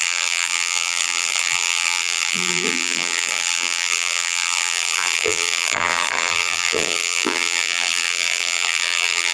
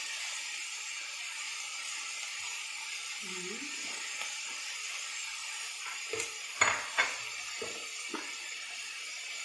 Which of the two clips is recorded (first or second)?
second